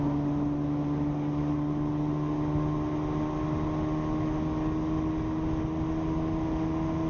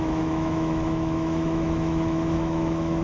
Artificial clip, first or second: second